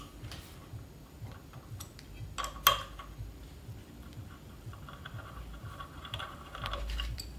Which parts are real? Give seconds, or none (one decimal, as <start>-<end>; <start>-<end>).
0.6-5.0